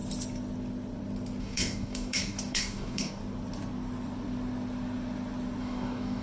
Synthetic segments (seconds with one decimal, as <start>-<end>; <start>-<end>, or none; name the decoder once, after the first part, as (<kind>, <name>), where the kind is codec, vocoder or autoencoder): 1.4-3.2 (codec, DAC); 5.6-6.2